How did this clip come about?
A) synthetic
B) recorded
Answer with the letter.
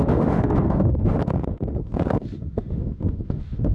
A